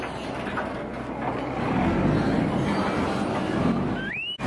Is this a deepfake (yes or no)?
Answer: no